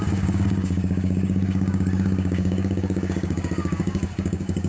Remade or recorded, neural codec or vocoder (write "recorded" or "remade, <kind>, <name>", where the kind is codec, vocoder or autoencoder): remade, codec, DAC